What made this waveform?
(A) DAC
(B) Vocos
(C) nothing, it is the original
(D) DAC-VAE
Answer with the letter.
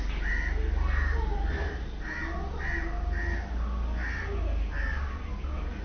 C